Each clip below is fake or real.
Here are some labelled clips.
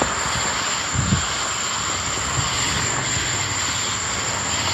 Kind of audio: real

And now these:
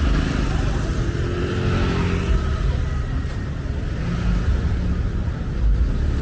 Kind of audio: real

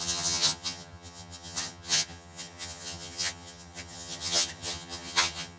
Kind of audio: fake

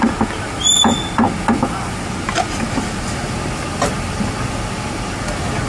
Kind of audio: real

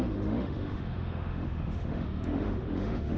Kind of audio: fake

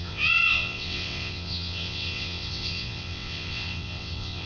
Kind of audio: fake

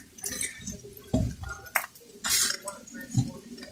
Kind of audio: real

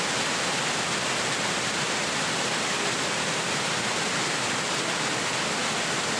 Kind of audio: real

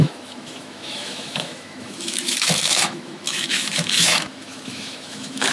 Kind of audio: fake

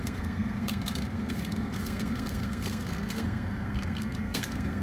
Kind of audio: fake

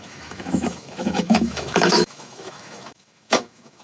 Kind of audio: fake